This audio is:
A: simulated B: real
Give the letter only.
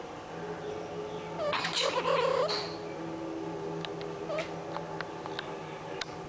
B